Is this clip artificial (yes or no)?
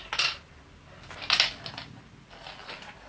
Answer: no